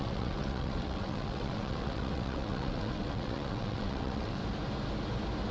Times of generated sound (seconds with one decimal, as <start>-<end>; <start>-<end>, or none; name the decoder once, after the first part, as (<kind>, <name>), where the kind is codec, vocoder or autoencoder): 0.0-4.4 (vocoder, WaveNeXt)